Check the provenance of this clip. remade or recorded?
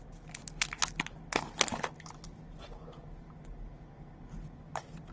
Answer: recorded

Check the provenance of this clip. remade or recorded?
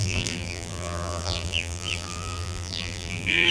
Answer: remade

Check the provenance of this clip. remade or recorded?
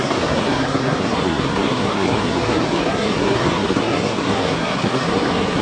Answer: remade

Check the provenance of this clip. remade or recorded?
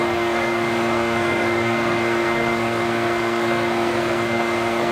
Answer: remade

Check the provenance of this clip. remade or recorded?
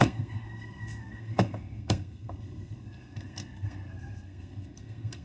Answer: remade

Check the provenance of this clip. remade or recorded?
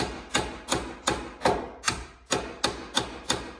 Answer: recorded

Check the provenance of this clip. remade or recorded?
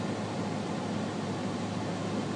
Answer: recorded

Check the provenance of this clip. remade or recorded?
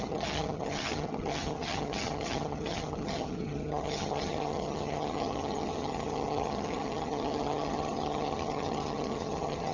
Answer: remade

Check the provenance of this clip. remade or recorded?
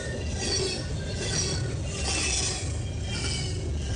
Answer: recorded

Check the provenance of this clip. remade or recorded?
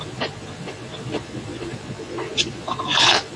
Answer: remade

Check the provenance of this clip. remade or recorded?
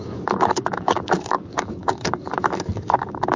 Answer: remade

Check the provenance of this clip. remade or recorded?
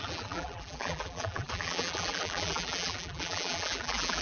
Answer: remade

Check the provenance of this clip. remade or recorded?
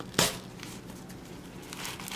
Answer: recorded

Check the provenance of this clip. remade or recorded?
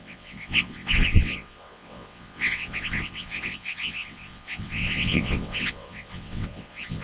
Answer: remade